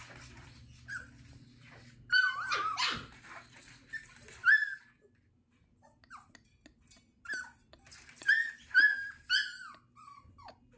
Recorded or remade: recorded